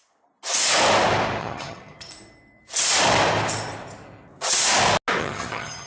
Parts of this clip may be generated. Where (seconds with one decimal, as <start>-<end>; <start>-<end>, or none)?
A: 1.4-2.1; 5.2-5.9